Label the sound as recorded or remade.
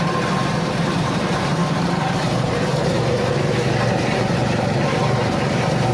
remade